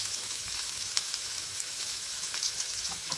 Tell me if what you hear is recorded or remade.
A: remade